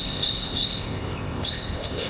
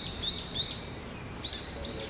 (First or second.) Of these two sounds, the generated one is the first